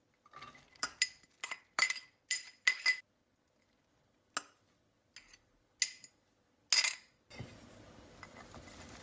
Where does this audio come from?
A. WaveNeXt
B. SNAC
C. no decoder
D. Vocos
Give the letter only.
C